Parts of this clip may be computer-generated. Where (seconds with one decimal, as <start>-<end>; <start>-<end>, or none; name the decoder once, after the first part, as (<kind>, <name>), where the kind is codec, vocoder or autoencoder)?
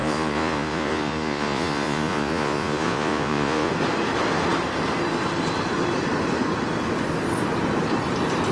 0.0-3.7 (vocoder, Vocos)